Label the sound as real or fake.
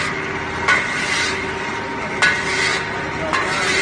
real